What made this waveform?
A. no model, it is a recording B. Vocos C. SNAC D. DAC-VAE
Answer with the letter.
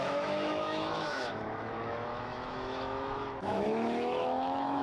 D